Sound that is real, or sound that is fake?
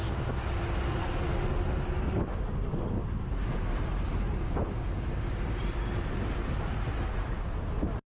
real